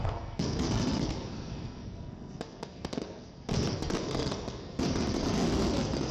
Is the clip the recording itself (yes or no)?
no